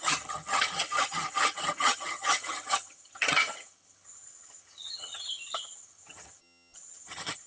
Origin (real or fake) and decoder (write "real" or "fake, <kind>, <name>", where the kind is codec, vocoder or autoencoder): fake, vocoder, HiFi-GAN